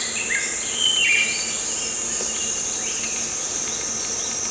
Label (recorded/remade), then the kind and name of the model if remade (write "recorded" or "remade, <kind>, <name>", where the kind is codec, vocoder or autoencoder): recorded